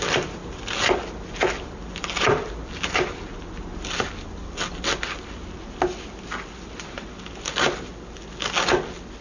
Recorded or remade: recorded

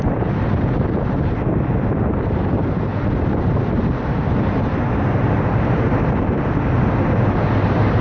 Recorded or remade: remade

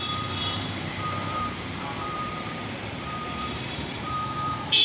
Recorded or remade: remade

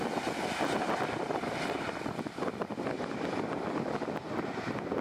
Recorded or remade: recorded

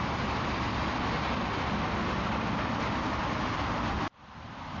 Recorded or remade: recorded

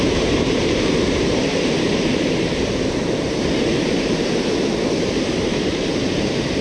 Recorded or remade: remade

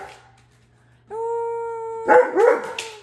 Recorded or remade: recorded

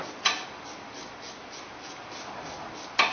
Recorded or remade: recorded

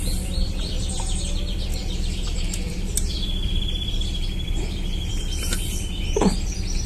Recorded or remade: remade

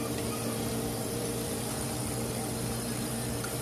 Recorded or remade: remade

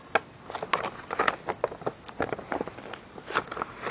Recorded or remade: recorded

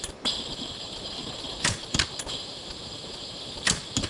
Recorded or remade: remade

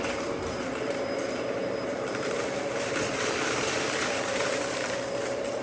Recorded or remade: remade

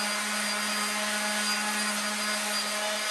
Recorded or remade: recorded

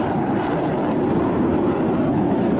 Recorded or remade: recorded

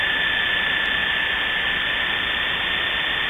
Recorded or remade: recorded